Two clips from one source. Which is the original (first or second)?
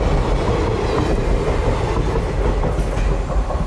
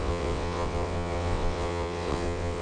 first